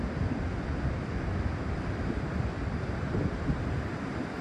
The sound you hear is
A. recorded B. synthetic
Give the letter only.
B